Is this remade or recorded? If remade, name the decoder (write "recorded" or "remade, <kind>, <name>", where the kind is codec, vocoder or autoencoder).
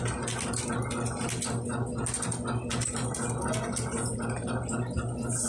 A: recorded